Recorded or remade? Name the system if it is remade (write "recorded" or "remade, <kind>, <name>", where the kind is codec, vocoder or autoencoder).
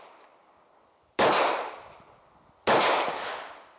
recorded